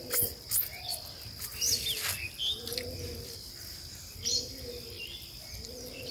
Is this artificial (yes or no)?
no